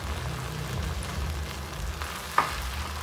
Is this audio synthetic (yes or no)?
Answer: no